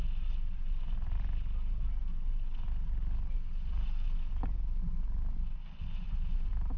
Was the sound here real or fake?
real